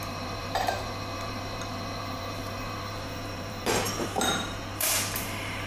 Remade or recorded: remade